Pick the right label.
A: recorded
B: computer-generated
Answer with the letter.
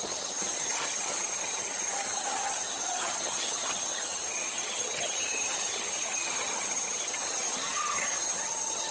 B